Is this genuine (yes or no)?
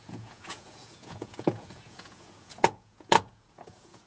no